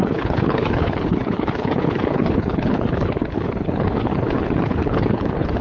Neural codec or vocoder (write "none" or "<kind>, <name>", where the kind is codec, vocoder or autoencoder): codec, HILCodec